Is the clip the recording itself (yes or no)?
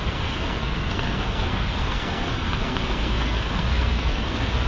no